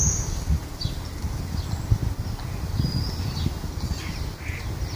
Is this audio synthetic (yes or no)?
no